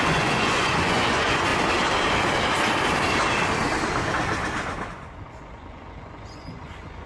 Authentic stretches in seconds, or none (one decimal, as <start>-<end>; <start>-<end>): 1.5-4.9